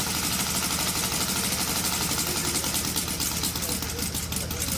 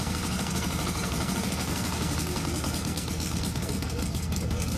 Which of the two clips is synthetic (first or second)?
second